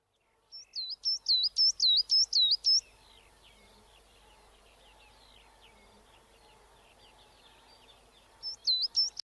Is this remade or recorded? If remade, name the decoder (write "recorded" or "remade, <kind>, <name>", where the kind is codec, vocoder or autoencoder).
recorded